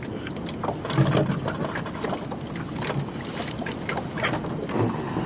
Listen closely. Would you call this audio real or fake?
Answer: real